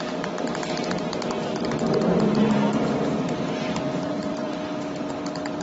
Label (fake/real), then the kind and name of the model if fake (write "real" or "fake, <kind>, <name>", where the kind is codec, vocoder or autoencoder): fake, vocoder, BigVGAN v2